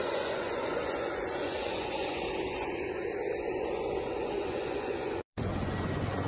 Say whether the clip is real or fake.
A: fake